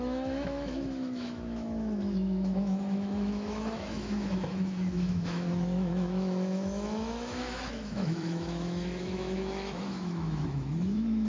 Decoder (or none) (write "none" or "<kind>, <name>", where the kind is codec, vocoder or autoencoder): autoencoder, DAC-VAE